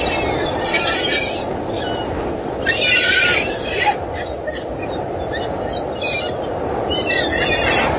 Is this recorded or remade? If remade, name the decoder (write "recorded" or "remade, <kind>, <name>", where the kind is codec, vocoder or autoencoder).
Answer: recorded